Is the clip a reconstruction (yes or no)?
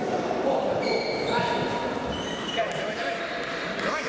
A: yes